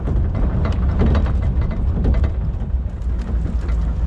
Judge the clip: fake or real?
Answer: real